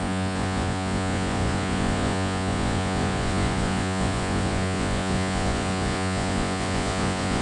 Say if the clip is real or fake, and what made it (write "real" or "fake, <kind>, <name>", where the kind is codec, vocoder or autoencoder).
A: fake, vocoder, Vocos